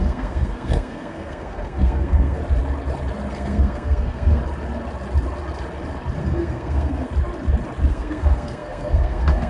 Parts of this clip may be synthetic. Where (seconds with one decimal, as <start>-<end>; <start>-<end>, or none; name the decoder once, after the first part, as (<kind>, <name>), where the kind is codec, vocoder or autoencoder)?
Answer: 0.0-2.4 (codec, SNAC); 3.3-4.4; 6.2-7.1; 7.9-9.5